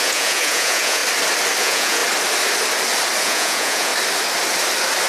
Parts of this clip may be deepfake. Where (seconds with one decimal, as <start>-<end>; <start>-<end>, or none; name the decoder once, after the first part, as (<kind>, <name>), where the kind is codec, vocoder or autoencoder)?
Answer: 0.0-1.0 (vocoder, Vocos); 1.6-2.0; 3.2-3.9